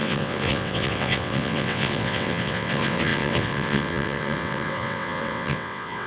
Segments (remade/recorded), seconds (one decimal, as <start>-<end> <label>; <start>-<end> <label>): 0.0-6.1 remade